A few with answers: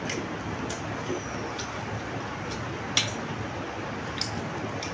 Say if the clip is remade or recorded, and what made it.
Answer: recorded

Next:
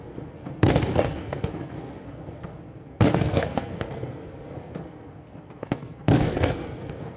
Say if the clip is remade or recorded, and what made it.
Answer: remade, codec, SNAC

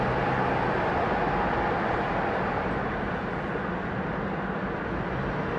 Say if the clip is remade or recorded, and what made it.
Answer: recorded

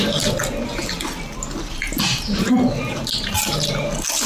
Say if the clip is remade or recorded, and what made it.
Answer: recorded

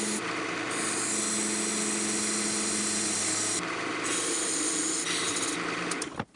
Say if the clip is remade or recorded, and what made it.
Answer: recorded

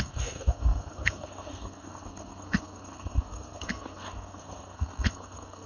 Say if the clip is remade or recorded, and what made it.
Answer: remade, codec, SNAC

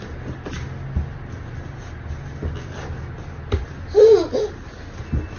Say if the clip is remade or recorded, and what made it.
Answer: recorded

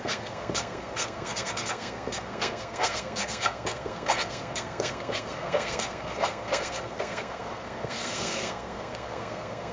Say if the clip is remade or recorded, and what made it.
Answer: remade, codec, SNAC